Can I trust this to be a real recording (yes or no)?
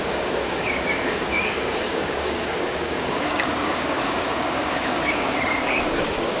no